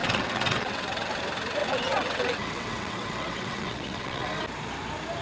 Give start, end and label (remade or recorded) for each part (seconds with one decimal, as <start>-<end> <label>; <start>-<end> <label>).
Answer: 0.0-1.2 remade; 1.2-1.6 recorded; 1.6-4.3 remade; 4.3-5.2 recorded